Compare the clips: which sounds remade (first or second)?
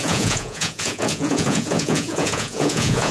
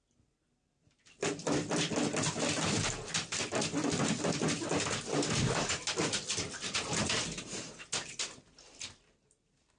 first